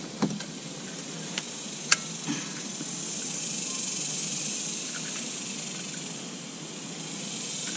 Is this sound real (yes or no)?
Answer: yes